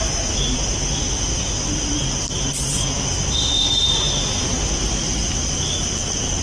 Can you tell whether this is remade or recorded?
remade